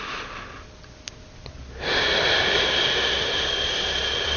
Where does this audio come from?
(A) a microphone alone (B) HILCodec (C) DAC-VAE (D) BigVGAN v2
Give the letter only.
A